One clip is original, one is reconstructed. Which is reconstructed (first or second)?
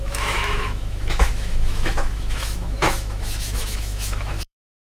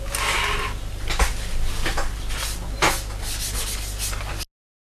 first